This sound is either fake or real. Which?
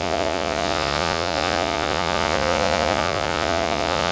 fake